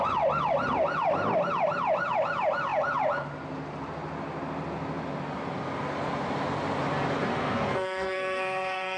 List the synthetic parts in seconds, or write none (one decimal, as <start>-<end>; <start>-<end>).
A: 7.2-9.0